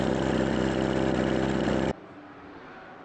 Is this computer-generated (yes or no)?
yes